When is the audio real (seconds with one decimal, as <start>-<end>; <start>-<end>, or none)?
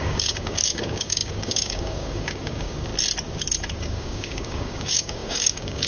2.9-3.8